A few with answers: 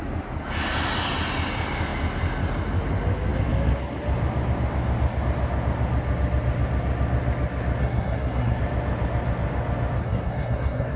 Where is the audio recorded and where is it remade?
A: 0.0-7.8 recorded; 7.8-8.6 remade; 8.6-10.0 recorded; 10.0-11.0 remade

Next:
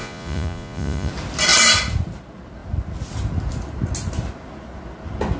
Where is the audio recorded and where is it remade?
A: 0.0-1.1 remade; 1.1-5.4 recorded

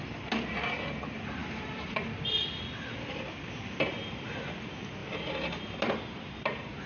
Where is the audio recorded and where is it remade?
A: 0.0-6.9 recorded

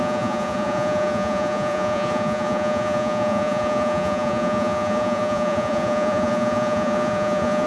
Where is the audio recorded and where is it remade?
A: 0.0-7.7 remade